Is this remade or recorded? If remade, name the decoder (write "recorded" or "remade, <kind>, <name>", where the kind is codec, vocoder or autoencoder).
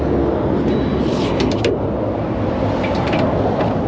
recorded